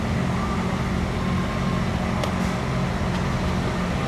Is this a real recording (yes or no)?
yes